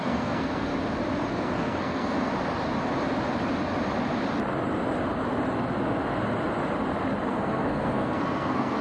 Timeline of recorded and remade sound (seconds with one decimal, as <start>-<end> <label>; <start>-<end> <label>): 0.0-0.7 remade; 0.7-1.3 recorded; 1.3-2.3 remade; 2.3-7.3 recorded; 7.3-8.8 remade